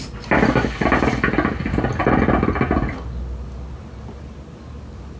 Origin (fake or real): real